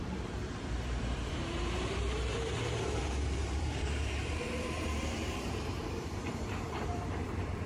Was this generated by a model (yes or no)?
yes